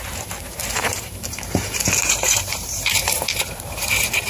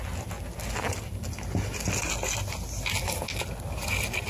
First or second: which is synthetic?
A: first